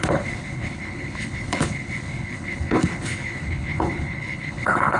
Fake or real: fake